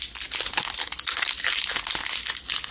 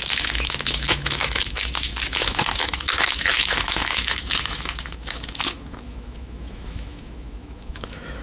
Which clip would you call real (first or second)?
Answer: first